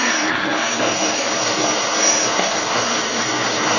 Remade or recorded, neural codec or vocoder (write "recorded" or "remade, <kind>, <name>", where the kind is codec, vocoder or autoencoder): remade, codec, SNAC